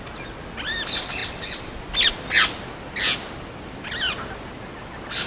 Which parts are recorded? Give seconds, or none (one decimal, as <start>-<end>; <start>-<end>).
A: 0.0-5.3